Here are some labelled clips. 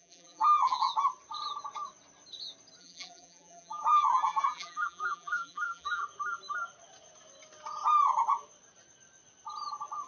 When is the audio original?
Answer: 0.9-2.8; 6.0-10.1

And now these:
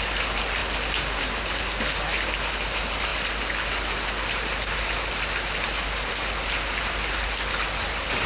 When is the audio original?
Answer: 0.0-0.6; 1.2-3.1; 6.1-8.3

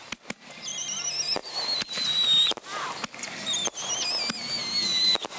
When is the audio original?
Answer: 0.0-5.4